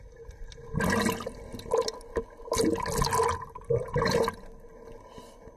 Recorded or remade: recorded